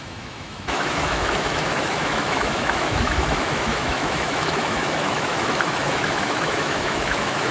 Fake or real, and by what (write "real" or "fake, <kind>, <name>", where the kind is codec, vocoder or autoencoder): fake, autoencoder, DAC-VAE